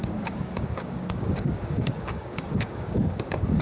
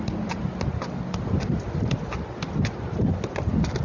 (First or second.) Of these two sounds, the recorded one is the second